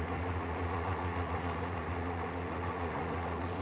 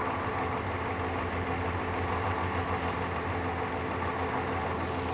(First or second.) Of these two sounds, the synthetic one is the first